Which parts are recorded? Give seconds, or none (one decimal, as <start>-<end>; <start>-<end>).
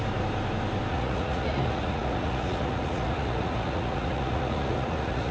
0.0-0.9